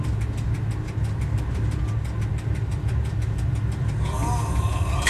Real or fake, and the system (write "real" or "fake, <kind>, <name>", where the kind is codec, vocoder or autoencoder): real